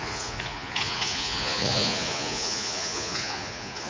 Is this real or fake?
fake